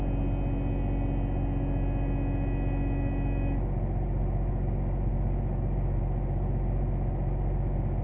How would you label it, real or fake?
real